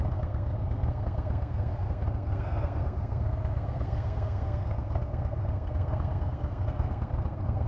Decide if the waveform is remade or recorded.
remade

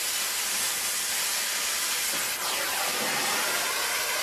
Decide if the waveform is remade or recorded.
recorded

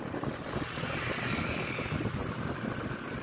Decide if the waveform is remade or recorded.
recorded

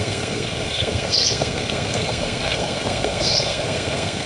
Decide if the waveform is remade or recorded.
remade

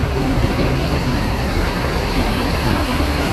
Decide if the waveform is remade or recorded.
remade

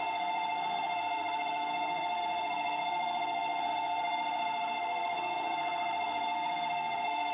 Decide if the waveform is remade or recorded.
remade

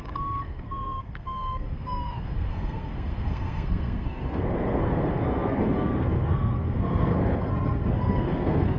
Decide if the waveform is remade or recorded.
remade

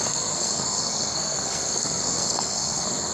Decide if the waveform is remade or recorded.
remade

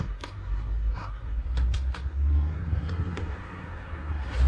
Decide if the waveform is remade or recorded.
remade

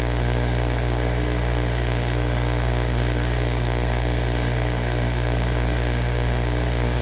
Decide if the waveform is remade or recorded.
remade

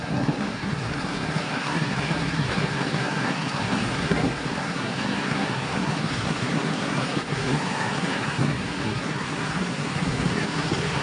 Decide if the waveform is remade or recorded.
remade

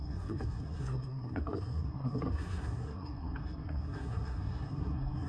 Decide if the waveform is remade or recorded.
remade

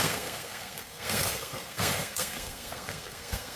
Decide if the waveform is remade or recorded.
remade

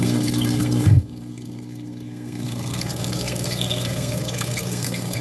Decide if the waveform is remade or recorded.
remade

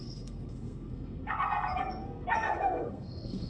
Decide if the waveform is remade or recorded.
remade